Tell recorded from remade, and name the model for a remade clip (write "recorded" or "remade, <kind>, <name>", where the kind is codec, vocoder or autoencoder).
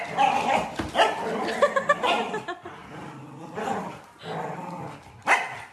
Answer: recorded